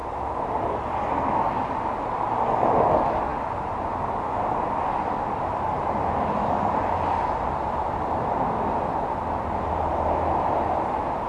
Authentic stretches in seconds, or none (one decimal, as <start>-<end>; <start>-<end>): 0.0-11.3